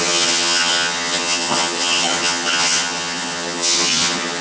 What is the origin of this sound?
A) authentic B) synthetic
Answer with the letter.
B